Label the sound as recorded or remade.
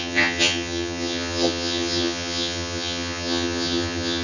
remade